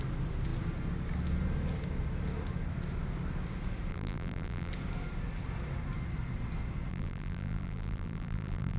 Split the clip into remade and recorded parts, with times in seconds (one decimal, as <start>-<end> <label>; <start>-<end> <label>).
0.0-3.9 recorded; 3.9-4.7 remade; 4.7-6.9 recorded; 6.9-8.8 remade